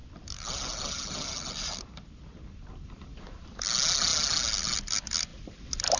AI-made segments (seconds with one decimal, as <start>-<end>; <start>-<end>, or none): 0.0-3.6